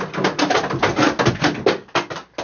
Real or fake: real